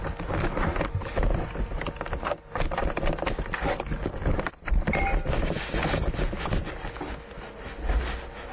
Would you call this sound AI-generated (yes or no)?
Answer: no